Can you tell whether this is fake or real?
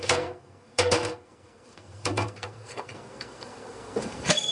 fake